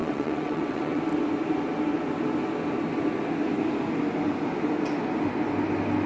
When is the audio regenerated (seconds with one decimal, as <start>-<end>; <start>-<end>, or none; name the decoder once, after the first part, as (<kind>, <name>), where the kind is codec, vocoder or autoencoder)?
0.0-1.0 (vocoder, WaveNeXt)